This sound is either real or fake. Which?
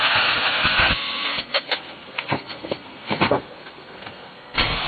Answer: fake